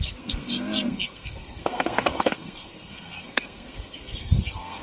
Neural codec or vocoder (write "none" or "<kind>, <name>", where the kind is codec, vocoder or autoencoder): codec, SNAC